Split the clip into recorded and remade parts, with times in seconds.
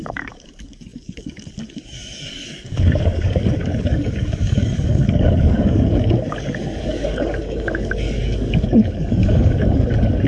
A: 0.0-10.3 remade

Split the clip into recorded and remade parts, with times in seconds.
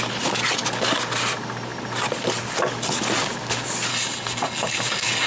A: 0.0-3.9 recorded; 3.9-5.3 remade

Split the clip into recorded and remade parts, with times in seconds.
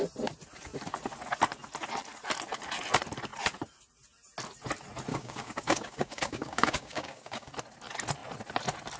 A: 0.0-5.1 recorded; 5.1-7.5 remade; 7.5-9.0 recorded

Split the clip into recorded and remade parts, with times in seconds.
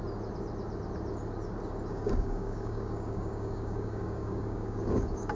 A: 0.0-1.9 recorded; 1.9-5.4 remade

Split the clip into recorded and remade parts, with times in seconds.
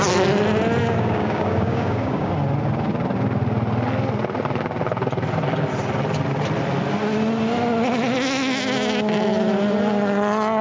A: 0.0-0.8 recorded; 0.8-2.3 remade; 2.3-10.6 recorded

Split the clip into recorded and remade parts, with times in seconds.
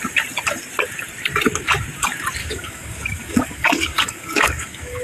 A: 0.0-2.4 recorded; 2.4-5.0 remade